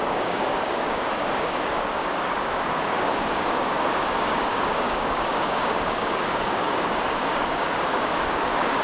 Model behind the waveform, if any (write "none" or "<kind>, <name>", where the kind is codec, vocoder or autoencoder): codec, DAC